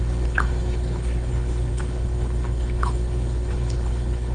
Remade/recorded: remade